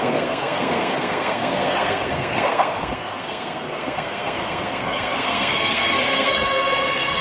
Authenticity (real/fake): fake